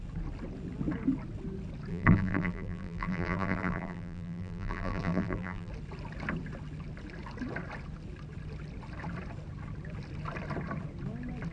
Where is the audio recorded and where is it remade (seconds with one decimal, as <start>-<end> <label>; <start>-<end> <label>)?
0.0-1.9 recorded; 1.9-5.7 remade; 5.7-11.5 recorded